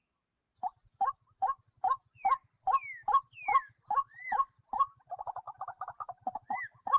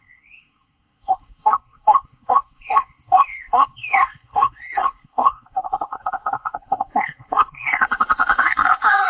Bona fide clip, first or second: first